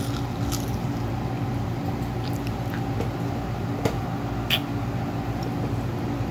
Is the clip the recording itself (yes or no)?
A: yes